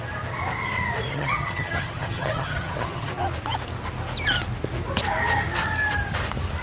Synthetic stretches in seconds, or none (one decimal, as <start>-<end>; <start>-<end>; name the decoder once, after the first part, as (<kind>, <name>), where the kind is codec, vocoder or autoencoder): 1.1-3.1 (vocoder, HiFi-GAN)